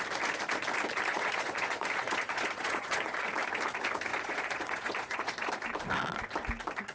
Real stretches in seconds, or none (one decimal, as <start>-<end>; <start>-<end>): 0.0-1.1; 3.3-4.1; 5.5-6.9